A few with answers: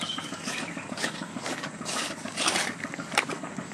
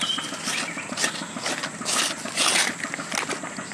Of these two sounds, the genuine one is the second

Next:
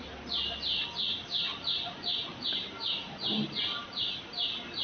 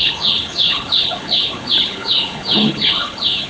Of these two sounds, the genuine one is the first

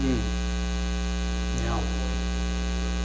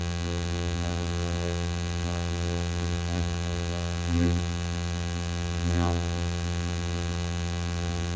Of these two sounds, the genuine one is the first